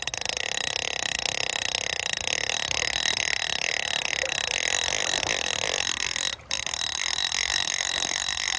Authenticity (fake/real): real